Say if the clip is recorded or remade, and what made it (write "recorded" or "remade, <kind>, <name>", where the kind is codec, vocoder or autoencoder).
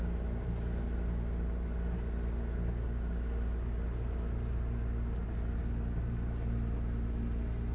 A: recorded